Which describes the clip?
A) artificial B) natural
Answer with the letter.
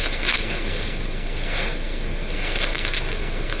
A